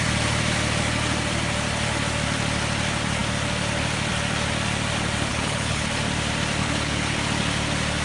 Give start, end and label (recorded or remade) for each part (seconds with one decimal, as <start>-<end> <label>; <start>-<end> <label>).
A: 0.0-5.3 recorded; 5.3-5.9 remade; 5.9-6.6 recorded; 6.6-7.2 remade; 7.2-8.0 recorded